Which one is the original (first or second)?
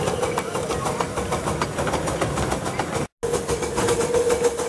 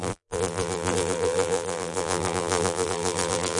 first